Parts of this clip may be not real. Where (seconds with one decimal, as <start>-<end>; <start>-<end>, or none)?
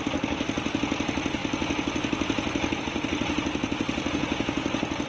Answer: none